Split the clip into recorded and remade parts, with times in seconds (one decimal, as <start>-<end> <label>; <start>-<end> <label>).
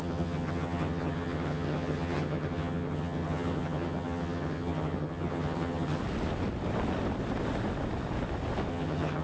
0.0-6.0 remade; 6.0-8.7 recorded; 8.7-9.2 remade